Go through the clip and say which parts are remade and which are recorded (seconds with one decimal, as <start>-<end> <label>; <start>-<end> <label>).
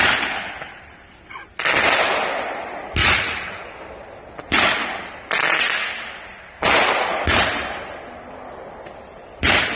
0.0-3.0 recorded; 3.0-3.8 remade; 3.8-9.8 recorded